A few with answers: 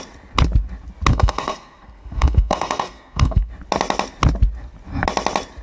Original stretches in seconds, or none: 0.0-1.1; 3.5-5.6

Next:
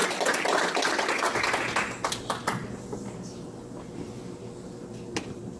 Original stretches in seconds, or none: 0.0-2.1; 2.6-4.9

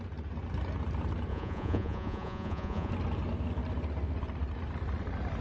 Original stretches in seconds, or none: 0.0-1.3; 2.9-5.4

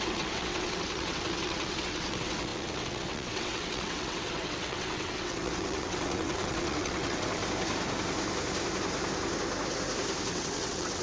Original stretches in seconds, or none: 7.4-10.3

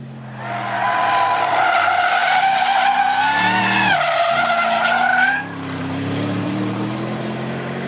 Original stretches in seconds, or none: 0.0-5.1; 7.2-7.9

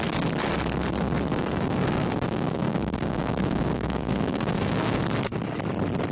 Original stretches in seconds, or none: 0.0-1.3; 5.0-6.1

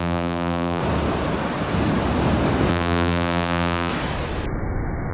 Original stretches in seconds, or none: 0.8-2.7; 3.9-5.1

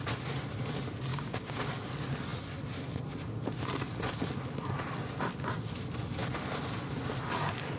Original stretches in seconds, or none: 0.0-1.1; 1.7-7.8